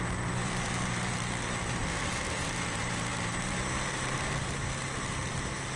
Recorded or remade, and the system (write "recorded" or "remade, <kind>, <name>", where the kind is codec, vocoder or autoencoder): remade, vocoder, BigVGAN v2